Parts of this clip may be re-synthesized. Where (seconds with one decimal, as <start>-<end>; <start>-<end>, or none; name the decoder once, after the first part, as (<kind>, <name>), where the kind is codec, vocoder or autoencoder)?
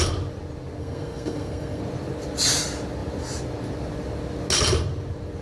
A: 0.8-1.8 (codec, SNAC)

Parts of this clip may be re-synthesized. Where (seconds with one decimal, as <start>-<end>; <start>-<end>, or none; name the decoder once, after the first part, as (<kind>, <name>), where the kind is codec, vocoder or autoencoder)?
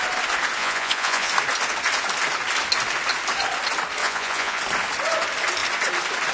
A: 0.6-1.3 (vocoder, Vocos); 4.0-4.6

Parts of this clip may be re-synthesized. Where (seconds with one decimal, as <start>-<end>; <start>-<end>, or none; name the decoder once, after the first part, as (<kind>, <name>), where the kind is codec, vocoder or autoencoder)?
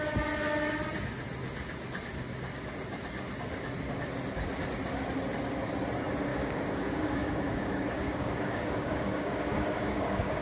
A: 6.3-10.4 (codec, DAC)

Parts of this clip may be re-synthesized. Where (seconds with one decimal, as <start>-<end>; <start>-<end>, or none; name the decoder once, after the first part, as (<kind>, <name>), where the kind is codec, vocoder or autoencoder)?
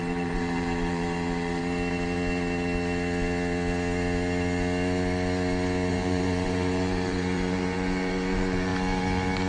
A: 0.0-1.6 (vocoder, BigVGAN v2); 5.9-8.7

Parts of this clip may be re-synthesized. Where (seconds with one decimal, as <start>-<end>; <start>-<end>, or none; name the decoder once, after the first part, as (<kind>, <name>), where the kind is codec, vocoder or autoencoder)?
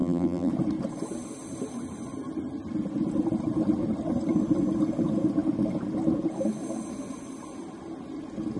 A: 0.0-0.5 (vocoder, BigVGAN v2)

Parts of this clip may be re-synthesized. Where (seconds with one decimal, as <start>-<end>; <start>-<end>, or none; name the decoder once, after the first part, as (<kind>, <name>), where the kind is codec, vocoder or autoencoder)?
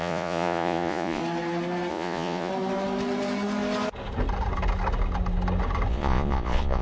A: 0.0-1.2 (vocoder, Vocos); 1.9-2.5; 5.9-6.8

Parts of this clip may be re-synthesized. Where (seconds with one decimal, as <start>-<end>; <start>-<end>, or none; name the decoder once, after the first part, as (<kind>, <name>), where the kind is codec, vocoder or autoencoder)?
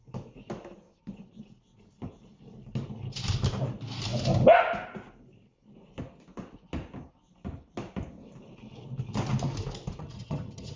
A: 10.0-10.8 (vocoder, HiFi-GAN)